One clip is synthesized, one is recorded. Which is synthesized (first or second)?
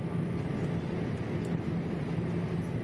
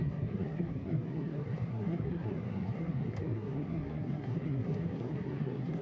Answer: second